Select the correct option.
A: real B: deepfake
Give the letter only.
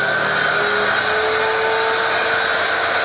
A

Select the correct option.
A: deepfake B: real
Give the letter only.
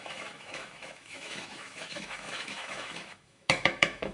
A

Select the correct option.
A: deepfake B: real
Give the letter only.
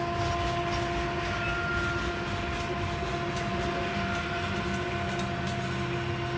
B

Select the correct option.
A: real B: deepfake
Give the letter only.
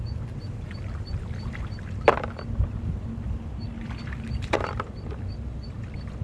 B